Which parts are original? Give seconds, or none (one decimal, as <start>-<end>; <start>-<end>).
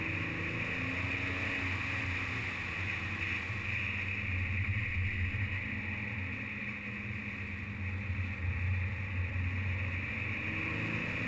0.0-11.3